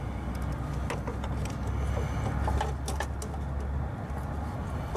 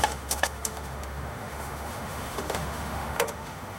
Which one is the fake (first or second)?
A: second